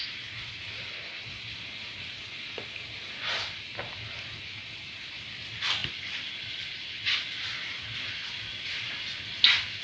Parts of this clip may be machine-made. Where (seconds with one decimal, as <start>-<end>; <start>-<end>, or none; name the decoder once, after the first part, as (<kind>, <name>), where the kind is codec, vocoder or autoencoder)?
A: 5.8-7.7 (vocoder, BigVGAN v2)